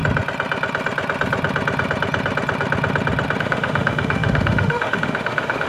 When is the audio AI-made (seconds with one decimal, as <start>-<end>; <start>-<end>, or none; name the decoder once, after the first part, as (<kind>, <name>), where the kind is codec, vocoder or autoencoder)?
3.4-5.7 (autoencoder, DAC-VAE)